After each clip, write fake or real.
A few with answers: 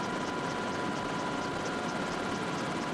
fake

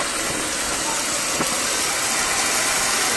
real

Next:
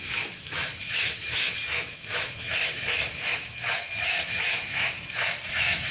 fake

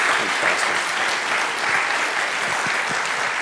real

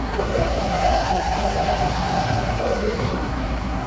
fake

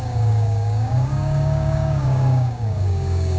fake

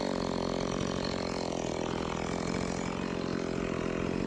real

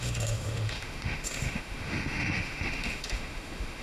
fake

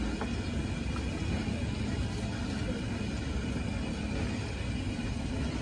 real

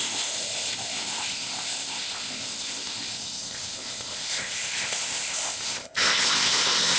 fake